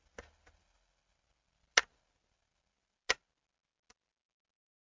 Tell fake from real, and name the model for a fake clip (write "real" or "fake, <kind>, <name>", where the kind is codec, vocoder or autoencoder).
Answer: real